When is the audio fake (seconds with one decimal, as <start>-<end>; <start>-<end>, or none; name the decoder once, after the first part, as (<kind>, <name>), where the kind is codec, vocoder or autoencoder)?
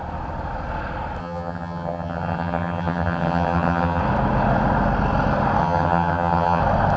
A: 1.2-4.0 (vocoder, HiFi-GAN); 5.6-6.6